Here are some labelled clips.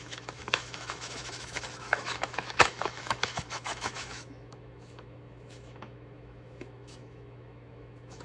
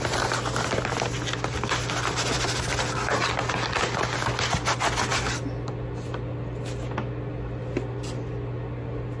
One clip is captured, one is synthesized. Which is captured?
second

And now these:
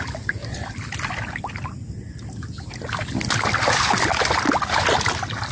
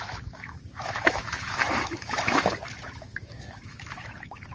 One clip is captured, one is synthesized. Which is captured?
first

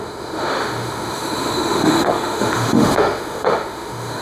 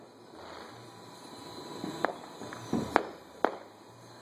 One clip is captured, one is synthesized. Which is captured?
second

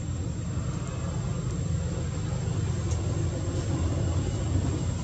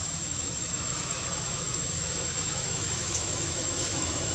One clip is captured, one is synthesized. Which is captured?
first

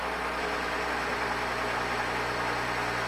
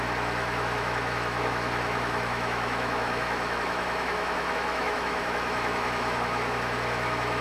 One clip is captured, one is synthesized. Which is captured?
first